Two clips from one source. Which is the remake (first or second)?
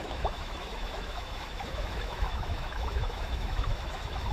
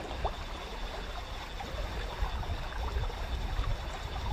first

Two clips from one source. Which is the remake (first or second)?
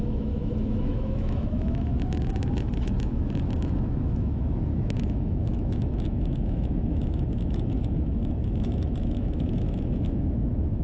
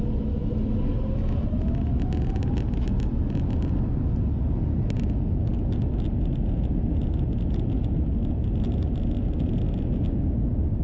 first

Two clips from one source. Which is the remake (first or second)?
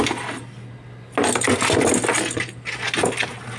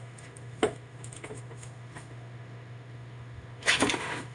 second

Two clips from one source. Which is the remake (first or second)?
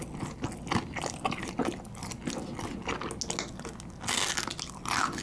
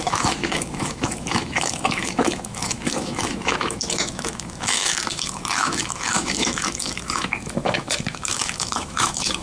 second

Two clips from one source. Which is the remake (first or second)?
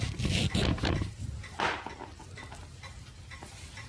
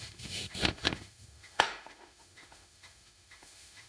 second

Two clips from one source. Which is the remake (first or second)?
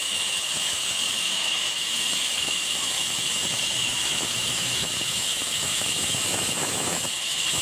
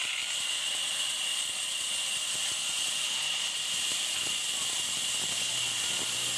first